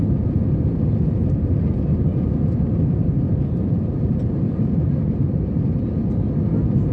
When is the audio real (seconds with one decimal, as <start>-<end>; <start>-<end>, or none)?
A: 0.0-2.1; 5.6-6.9

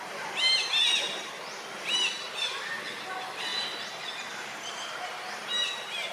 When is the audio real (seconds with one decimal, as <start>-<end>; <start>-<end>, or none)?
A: 0.0-6.1

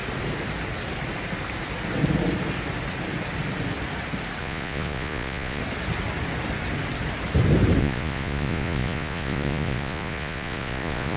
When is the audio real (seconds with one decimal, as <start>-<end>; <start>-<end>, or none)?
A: 0.0-4.4; 5.6-7.8

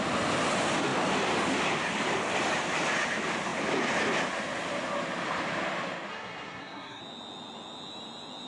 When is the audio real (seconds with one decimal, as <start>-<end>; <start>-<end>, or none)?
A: 0.0-6.1; 7.0-8.5

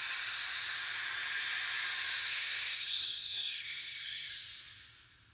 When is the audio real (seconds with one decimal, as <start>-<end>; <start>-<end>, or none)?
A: 0.0-2.3; 4.3-5.3

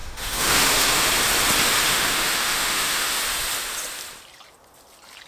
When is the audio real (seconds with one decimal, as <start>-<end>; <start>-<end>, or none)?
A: 1.1-1.8; 3.2-5.3

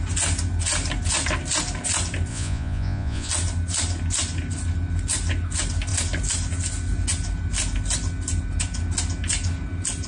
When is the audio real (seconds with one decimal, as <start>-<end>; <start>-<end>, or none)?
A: 0.0-2.3; 3.3-10.1

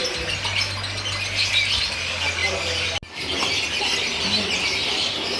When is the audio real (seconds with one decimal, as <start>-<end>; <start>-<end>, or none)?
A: 0.0-5.4